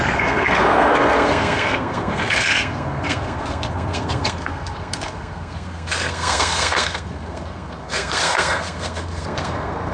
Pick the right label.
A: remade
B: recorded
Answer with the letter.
A